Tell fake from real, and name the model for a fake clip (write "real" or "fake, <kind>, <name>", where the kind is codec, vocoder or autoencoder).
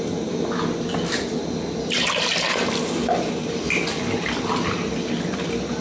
real